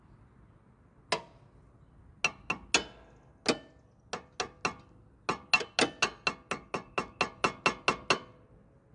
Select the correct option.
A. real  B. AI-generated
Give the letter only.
A